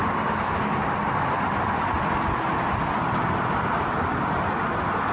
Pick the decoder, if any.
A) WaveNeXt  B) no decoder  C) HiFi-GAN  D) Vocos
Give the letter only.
B